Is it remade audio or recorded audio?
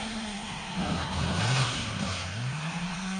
remade